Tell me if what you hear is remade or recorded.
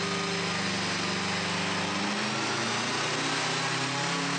recorded